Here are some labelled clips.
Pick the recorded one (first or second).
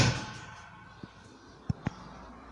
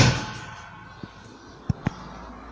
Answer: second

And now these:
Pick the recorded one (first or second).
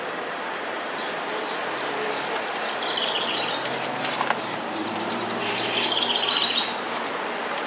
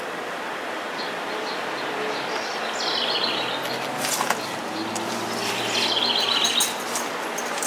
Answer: second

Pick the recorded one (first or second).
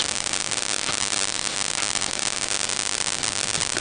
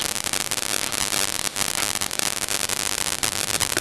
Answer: first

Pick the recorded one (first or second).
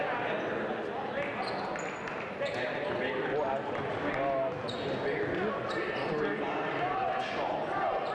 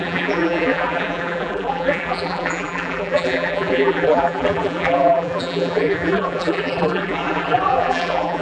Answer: first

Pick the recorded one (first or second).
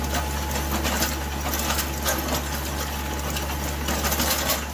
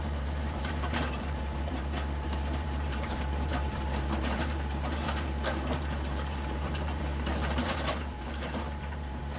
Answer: first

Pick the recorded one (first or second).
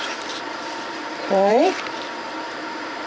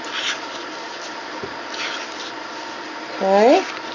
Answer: second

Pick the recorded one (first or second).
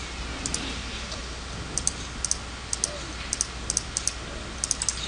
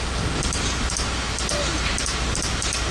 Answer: first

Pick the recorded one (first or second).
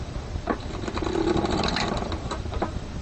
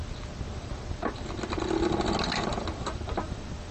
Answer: second